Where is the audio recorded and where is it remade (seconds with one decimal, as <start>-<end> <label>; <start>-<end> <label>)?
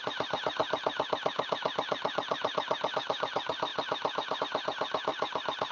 0.0-0.6 remade; 0.6-2.9 recorded; 2.9-5.7 remade